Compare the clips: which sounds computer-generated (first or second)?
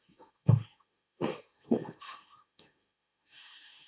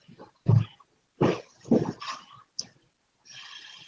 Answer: first